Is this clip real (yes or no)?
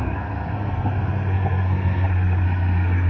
no